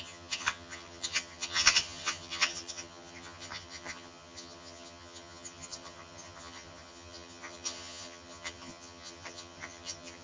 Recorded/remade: remade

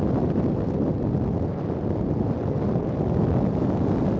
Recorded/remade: recorded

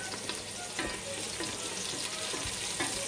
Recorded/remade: recorded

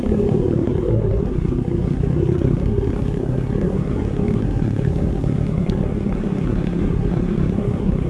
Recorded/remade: remade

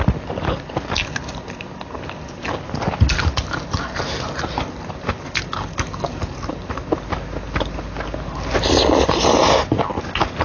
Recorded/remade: recorded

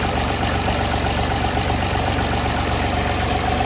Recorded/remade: recorded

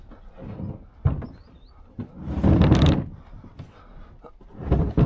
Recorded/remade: recorded